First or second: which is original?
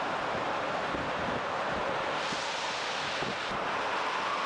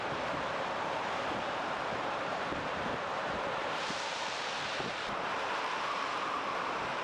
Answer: first